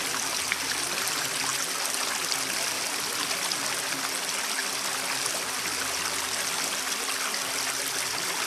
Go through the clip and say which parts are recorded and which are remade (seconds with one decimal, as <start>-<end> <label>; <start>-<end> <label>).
0.0-8.5 recorded